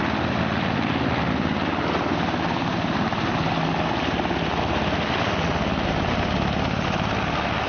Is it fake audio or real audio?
real